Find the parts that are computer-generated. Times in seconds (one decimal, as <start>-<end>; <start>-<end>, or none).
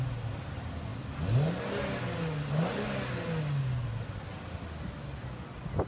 none